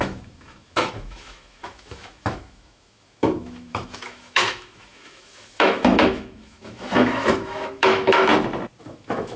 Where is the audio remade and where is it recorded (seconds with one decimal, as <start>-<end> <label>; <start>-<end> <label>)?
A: 0.0-8.3 remade; 8.3-8.8 recorded; 8.8-9.4 remade